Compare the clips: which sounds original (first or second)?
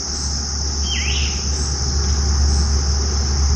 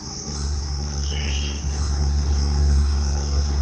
first